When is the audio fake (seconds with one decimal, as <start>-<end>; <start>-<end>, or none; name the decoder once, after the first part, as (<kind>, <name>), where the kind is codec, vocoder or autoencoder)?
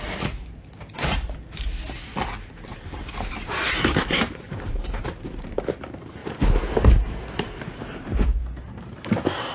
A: 0.0-1.7 (vocoder, BigVGAN v2); 3.3-9.5